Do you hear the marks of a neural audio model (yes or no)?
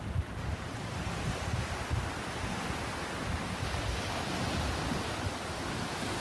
no